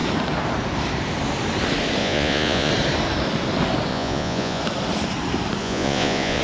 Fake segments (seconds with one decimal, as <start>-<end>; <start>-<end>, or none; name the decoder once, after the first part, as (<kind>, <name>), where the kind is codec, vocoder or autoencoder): 2.0-2.7 (vocoder, Vocos); 3.9-4.6; 5.6-6.4